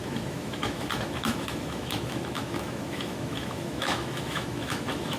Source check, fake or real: fake